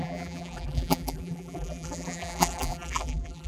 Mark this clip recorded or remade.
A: remade